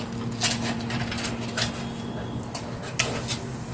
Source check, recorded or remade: recorded